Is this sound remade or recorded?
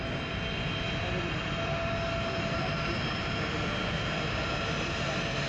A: recorded